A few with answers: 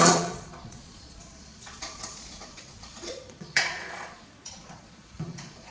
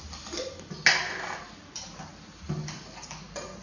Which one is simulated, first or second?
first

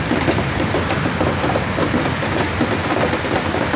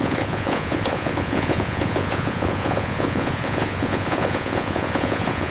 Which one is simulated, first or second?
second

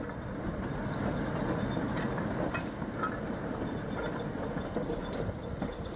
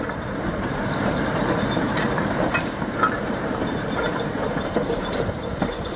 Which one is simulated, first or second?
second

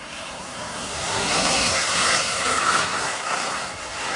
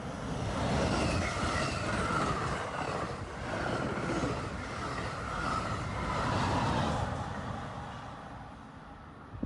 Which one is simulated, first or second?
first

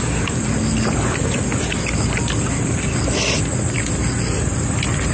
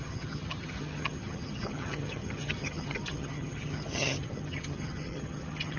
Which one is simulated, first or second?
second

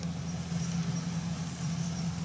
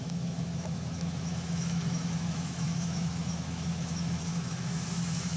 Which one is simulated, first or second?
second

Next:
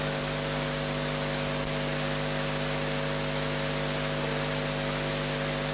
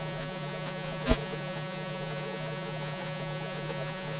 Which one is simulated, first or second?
second